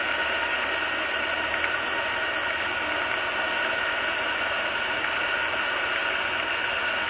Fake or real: real